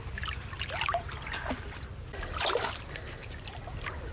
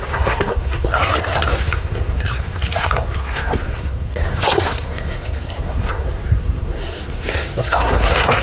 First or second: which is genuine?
first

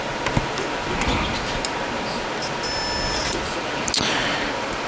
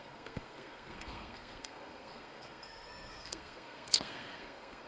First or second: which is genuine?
first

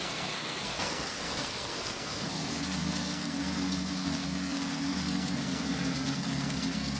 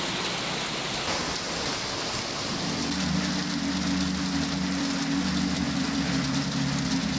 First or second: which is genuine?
second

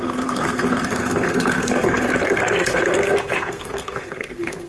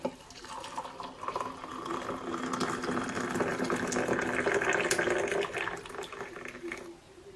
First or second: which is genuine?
second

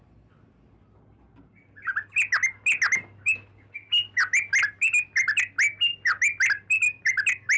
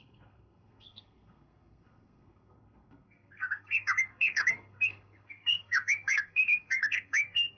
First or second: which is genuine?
first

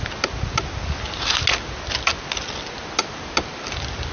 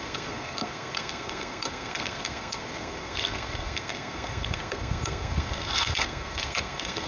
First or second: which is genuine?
first